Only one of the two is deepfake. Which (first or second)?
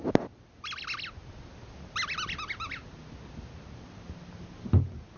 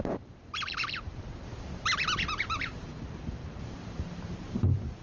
second